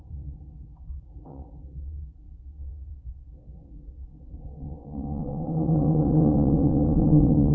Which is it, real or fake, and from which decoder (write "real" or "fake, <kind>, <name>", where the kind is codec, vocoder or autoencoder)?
fake, vocoder, WaveNeXt